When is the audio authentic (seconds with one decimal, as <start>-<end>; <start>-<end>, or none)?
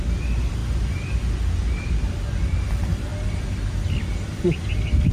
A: 0.0-5.1